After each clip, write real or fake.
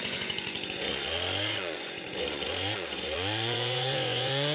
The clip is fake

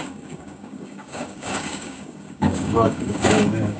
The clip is fake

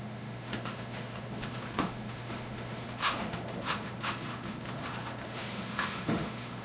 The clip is fake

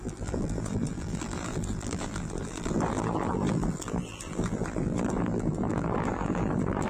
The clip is fake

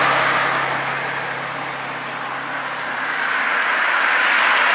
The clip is real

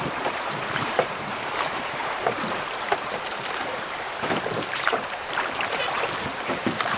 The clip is fake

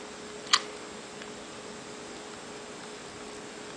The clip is real